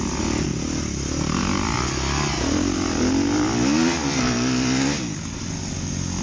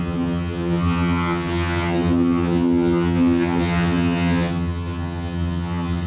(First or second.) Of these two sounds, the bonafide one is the first